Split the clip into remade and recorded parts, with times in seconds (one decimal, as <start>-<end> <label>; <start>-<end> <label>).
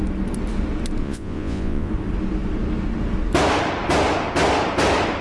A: 0.0-1.0 recorded; 1.0-1.9 remade; 1.9-5.2 recorded